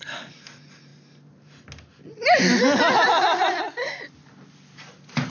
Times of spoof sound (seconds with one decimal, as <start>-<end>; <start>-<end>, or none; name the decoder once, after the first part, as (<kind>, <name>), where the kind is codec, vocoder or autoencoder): none